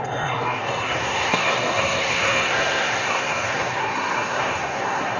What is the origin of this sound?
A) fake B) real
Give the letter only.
A